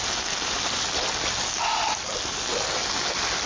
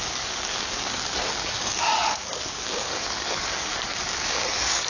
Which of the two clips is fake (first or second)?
second